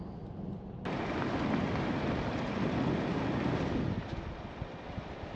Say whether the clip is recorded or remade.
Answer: recorded